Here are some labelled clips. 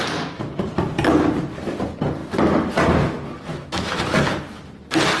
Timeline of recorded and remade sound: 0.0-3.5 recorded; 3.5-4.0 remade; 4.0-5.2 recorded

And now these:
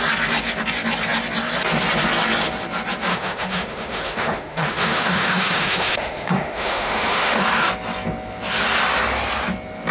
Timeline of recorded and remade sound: 0.0-3.1 recorded; 3.1-7.4 remade; 7.4-9.9 recorded

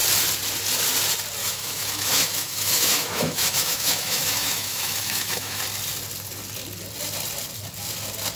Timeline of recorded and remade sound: 0.0-1.4 recorded; 1.4-5.6 remade; 5.6-8.4 recorded

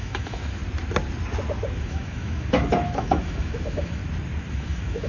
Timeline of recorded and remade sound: 0.0-0.6 remade; 0.6-1.8 recorded; 1.8-4.0 remade; 4.0-4.5 recorded; 4.5-5.1 remade

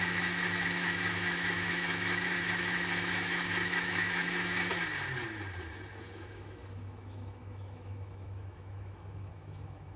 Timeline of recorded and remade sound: 0.0-4.7 remade; 4.7-6.0 recorded; 6.0-10.0 remade